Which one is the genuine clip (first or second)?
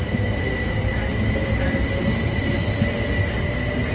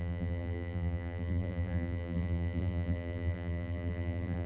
first